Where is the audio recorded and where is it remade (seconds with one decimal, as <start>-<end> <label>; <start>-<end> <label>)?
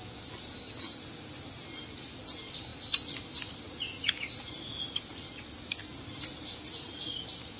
0.0-7.6 recorded